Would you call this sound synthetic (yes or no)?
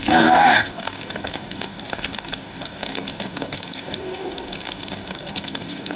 yes